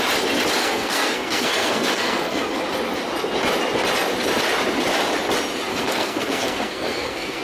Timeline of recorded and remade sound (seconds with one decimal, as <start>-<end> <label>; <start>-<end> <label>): 0.0-0.6 recorded; 0.6-2.6 remade; 2.6-5.7 recorded; 5.7-7.4 remade

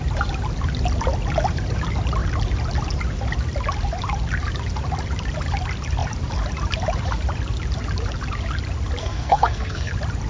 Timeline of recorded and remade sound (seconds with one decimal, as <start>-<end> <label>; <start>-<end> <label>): 0.0-9.0 recorded; 9.0-9.9 remade; 9.9-10.3 recorded

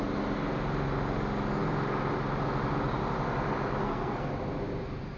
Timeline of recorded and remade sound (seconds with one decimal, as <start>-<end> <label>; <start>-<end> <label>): 0.0-3.8 recorded; 3.8-4.3 remade; 4.3-5.2 recorded

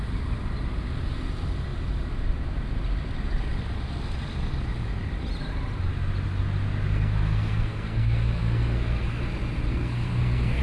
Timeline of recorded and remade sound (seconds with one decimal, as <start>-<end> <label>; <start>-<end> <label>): 0.0-6.9 recorded; 6.9-9.2 remade; 9.2-9.7 recorded; 9.7-10.6 remade

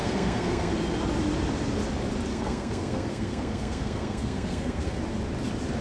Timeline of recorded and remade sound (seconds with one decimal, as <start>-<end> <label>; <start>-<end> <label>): 0.0-0.7 remade; 0.7-2.3 recorded; 2.3-5.0 remade; 5.0-5.8 recorded